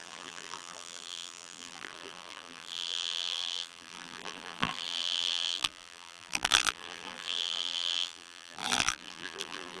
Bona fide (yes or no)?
no